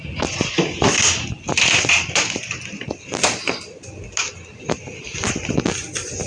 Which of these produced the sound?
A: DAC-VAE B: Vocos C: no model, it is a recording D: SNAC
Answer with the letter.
C